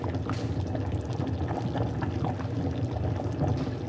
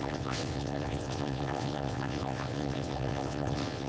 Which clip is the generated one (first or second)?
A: second